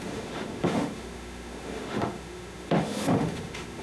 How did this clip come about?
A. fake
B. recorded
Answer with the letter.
A